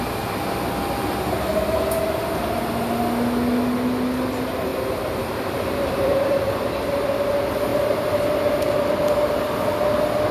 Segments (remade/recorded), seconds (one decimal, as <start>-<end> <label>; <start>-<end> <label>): 0.0-4.7 recorded; 4.7-6.4 remade; 6.4-10.3 recorded